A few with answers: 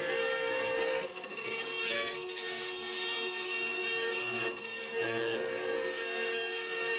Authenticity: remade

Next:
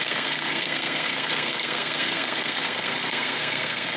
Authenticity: remade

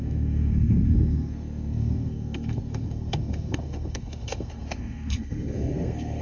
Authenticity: remade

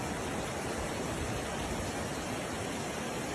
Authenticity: recorded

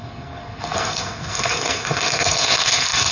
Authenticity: remade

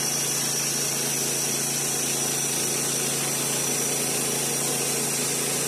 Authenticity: recorded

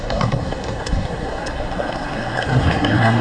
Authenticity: remade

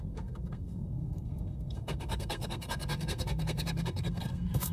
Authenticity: remade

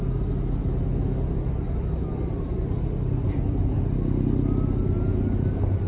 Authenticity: recorded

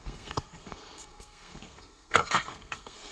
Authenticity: remade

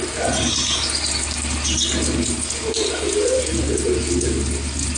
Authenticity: recorded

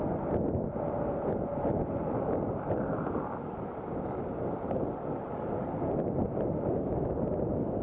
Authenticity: recorded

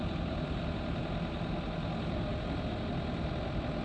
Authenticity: recorded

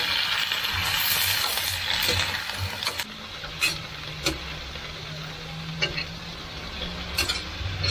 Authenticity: recorded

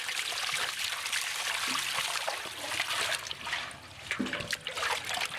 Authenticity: recorded